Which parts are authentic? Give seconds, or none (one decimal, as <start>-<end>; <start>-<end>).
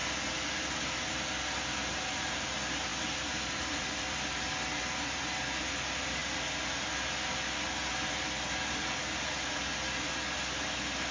0.0-11.1